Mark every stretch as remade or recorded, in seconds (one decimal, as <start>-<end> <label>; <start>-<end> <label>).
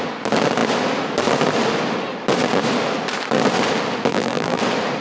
0.0-4.1 recorded; 4.1-4.6 remade; 4.6-5.0 recorded